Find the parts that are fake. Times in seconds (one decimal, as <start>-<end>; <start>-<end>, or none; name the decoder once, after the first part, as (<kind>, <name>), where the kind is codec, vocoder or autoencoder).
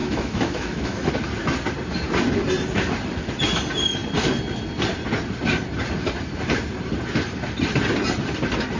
0.0-1.1 (autoencoder, DAC-VAE)